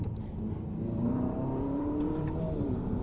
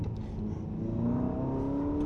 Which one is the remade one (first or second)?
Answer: first